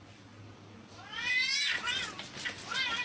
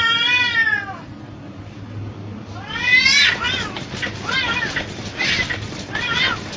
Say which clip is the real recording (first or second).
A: first